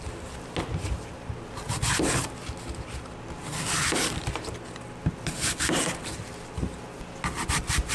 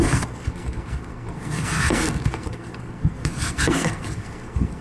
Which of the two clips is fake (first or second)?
second